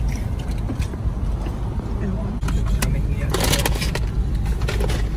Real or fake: real